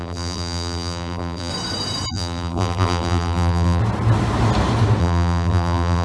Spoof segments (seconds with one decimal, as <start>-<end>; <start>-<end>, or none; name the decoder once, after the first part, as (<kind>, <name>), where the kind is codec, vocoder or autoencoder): 0.0-1.5 (vocoder, BigVGAN v2); 2.1-3.8; 5.0-6.0